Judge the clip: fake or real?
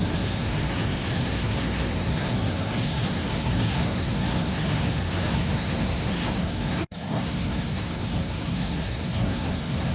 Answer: fake